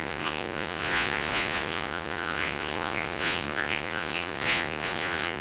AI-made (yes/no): yes